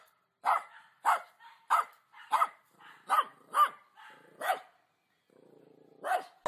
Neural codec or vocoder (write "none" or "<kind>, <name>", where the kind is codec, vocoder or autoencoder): none